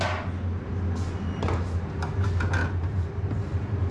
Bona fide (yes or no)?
yes